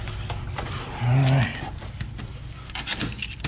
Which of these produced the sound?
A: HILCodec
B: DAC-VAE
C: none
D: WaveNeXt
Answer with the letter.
C